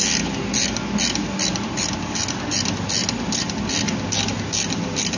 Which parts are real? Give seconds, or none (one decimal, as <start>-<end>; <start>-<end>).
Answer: 0.0-5.2